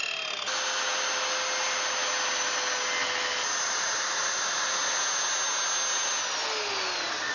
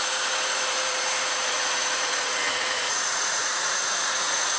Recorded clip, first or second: first